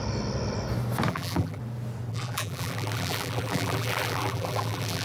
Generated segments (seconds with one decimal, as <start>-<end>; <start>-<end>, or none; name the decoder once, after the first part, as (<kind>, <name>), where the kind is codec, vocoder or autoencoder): 1.1-1.6 (vocoder, BigVGAN v2); 2.1-5.0